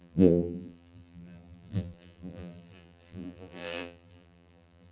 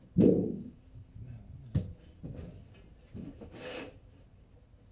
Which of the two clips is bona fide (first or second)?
second